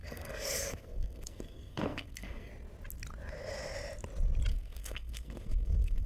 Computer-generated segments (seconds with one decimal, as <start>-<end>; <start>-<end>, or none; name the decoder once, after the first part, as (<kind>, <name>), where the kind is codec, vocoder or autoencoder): 0.0-2.5 (codec, SNAC); 4.5-6.1